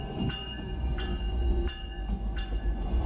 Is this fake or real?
fake